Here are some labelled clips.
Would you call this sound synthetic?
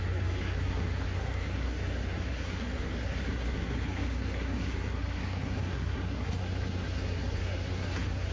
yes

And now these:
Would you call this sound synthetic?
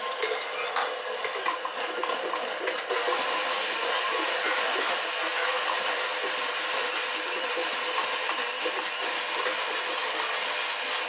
no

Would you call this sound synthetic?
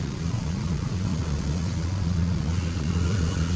yes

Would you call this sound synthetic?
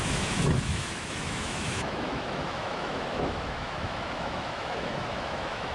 yes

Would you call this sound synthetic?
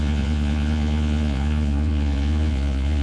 yes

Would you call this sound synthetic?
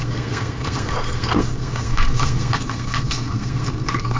yes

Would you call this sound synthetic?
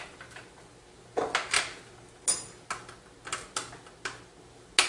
no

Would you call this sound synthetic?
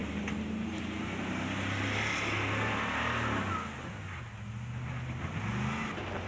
no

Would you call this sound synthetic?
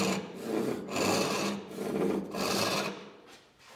no